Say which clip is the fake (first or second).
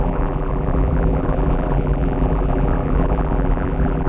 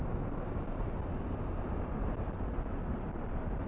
first